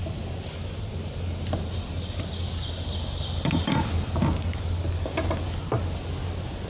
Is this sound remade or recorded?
recorded